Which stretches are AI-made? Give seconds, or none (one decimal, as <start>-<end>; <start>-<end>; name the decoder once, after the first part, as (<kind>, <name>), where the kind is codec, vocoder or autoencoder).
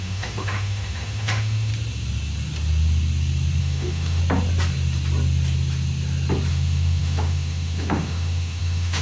0.0-1.7 (autoencoder, DAC-VAE); 3.6-4.2; 6.5-9.0